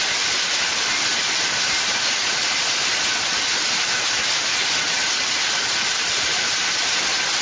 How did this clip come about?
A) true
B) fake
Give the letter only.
A